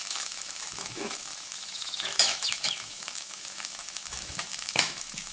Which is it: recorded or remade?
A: remade